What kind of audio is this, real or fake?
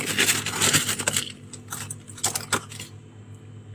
real